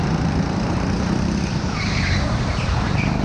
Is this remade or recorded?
remade